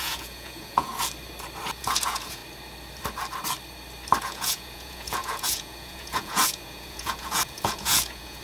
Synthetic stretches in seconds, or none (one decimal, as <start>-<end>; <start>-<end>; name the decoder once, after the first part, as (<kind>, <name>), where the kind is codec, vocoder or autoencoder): 0.0-0.9 (vocoder, Vocos); 1.8-2.4; 4.2-8.4